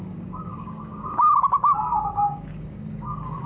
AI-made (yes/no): yes